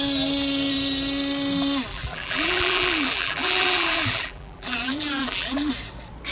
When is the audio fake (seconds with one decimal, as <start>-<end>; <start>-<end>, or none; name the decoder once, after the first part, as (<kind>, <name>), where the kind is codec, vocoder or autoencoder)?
1.9-5.7 (vocoder, BigVGAN v2)